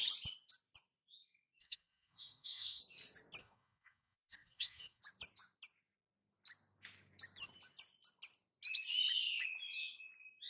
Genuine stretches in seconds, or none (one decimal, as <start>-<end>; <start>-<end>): 0.0-1.6; 2.8-3.4; 5.0-10.5